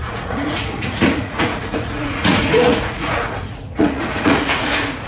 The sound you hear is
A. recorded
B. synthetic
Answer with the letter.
B